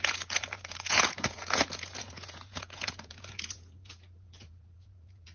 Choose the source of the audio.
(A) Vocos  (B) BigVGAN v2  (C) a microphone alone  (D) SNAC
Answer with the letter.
A